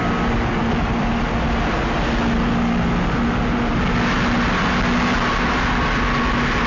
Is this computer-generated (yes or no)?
no